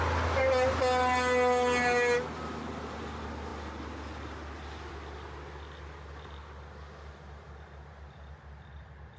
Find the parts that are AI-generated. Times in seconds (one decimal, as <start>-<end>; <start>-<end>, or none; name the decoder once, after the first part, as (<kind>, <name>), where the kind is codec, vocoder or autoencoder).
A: none